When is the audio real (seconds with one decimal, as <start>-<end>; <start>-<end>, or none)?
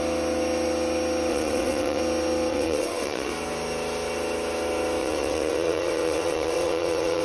0.0-1.3; 2.0-2.5; 3.3-5.0